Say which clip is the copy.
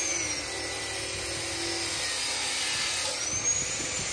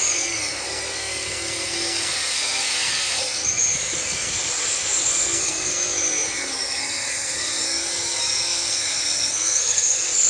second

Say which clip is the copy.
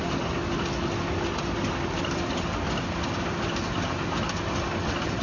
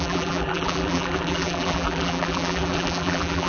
second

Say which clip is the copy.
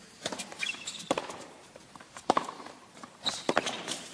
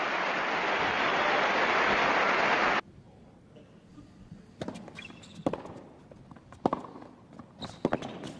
first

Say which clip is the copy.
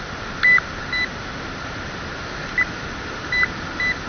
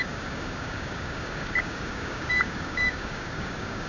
second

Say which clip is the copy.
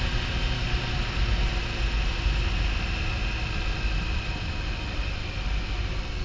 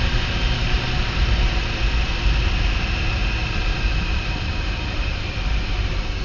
second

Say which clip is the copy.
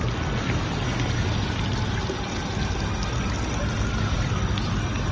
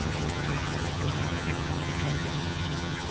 second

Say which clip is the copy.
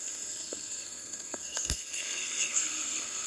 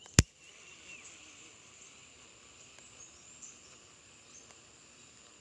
first